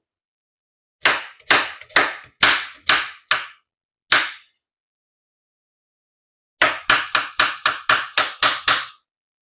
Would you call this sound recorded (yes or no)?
yes